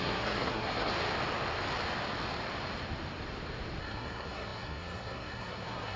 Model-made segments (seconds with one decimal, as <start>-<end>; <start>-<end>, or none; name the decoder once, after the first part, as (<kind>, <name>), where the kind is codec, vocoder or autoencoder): 0.0-0.9 (codec, SNAC); 3.8-6.0